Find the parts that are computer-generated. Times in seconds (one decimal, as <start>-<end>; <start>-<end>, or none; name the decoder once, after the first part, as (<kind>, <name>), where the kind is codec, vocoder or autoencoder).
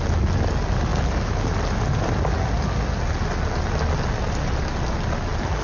none